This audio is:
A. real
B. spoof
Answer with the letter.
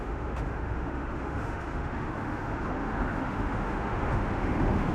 B